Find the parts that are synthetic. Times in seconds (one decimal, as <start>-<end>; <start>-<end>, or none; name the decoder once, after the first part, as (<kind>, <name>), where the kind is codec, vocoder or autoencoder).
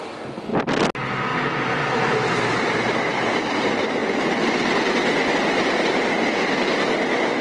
none